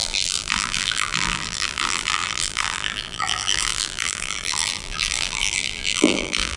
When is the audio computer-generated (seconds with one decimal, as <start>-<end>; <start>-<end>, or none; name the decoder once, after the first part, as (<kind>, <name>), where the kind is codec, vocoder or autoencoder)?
0.0-6.6 (vocoder, BigVGAN v2)